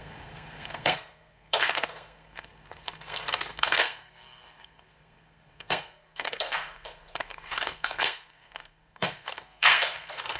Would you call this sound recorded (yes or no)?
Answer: no